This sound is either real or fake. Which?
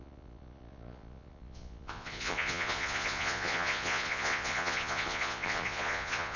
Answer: fake